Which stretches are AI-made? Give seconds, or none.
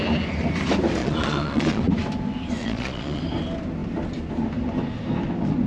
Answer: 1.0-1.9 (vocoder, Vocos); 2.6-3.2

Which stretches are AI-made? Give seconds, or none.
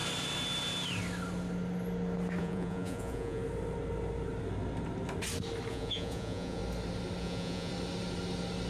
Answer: 2.4-3.4 (vocoder, Vocos); 5.7-6.6; 7.2-7.7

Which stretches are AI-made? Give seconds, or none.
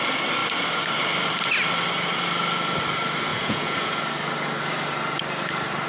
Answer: 3.3-4.0 (vocoder, Vocos)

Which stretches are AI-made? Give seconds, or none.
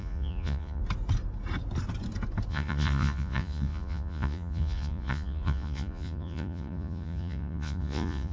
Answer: 0.0-0.8 (vocoder, Vocos); 2.5-8.3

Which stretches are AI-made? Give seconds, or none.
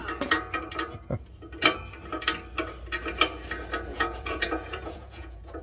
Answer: 3.9-5.6 (vocoder, Vocos)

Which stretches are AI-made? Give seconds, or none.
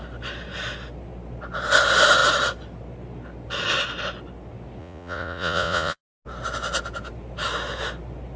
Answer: 4.8-6.0 (vocoder, Vocos)